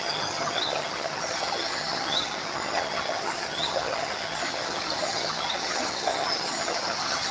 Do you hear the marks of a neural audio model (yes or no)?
yes